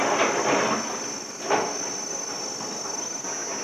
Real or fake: real